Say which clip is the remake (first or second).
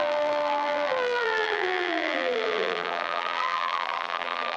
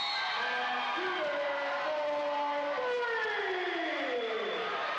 first